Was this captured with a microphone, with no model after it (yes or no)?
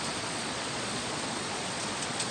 no